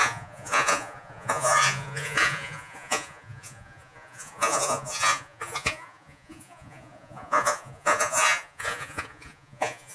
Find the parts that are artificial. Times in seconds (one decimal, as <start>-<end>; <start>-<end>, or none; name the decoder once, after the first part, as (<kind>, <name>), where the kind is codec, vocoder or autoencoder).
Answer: 0.0-9.9 (vocoder, Vocos)